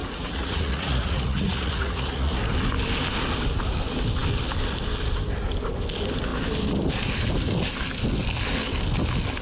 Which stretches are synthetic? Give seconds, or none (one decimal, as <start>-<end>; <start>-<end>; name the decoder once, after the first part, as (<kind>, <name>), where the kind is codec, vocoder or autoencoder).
0.0-2.4 (vocoder, Vocos)